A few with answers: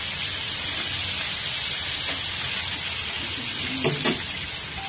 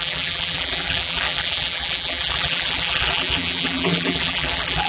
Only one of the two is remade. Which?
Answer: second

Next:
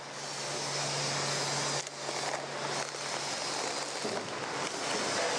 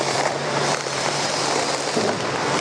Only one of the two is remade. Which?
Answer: second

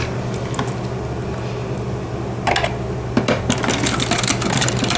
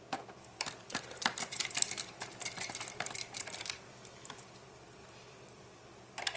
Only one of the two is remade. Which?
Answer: second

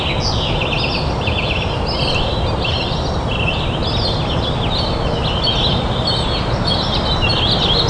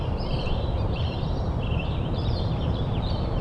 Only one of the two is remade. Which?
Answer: second